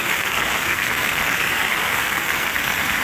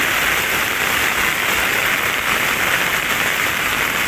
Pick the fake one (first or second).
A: first